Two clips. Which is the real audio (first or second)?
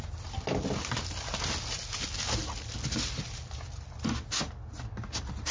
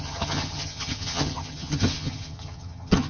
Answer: first